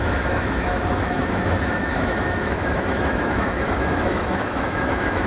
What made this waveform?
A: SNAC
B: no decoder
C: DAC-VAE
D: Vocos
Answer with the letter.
C